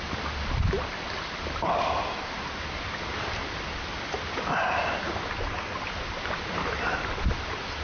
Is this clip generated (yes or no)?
no